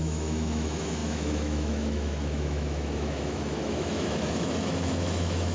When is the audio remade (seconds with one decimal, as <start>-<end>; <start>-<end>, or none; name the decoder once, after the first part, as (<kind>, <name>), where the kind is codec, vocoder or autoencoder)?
0.0-5.5 (autoencoder, DAC-VAE)